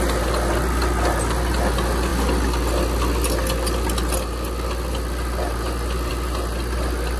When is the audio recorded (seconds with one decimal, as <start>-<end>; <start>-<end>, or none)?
0.0-7.2